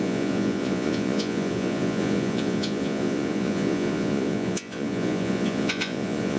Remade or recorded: remade